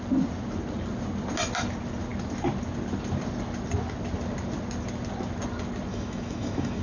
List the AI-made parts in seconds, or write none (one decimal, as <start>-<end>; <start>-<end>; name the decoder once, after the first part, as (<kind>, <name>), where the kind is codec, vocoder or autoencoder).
5.9-6.8 (autoencoder, DAC-VAE)